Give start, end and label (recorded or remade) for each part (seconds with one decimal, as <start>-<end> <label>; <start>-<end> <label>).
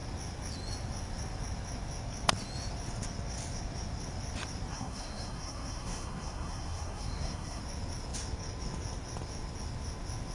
0.0-4.7 recorded; 4.7-7.6 remade; 7.6-10.3 recorded